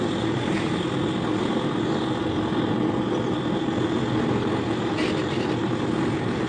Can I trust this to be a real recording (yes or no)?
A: yes